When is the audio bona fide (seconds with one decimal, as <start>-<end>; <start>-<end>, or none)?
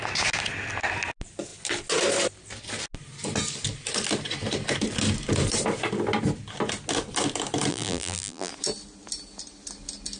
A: 0.0-7.7; 8.5-10.2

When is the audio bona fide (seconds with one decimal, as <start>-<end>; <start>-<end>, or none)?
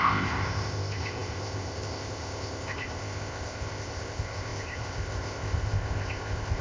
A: none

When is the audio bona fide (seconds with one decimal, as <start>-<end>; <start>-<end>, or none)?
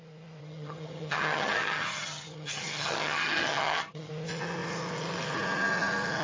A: 0.0-0.4; 4.1-6.2